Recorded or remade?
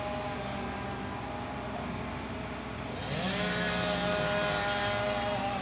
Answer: recorded